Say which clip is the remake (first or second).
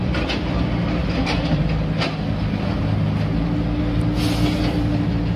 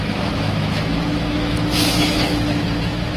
second